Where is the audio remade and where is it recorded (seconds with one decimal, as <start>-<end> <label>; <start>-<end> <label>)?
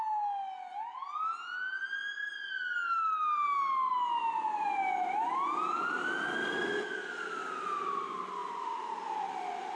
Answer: 0.0-9.8 recorded